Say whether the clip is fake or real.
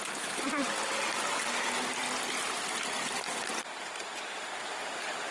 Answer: real